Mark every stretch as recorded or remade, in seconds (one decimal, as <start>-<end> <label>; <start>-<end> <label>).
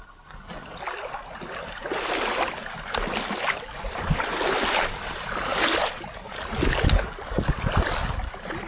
0.0-8.7 recorded